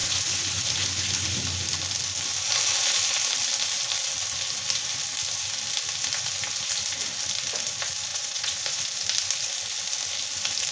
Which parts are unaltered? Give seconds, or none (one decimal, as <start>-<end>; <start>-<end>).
0.6-8.1; 8.8-10.7